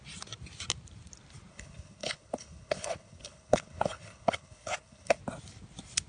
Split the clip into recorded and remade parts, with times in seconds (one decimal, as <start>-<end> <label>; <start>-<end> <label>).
0.0-1.5 recorded; 1.5-5.2 remade; 5.2-6.1 recorded